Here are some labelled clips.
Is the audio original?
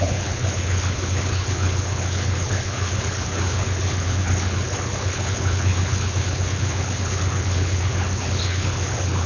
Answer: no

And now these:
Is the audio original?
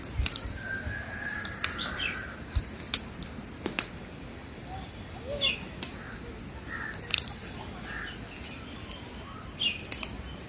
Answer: yes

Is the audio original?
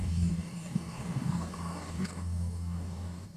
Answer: no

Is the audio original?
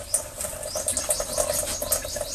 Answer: yes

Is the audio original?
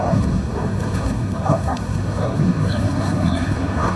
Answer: no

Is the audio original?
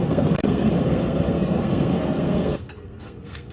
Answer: no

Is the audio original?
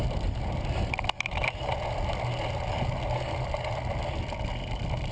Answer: yes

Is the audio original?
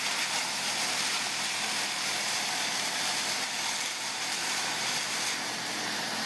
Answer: no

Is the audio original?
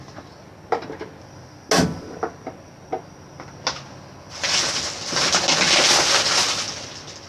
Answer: yes